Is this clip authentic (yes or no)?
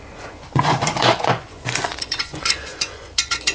no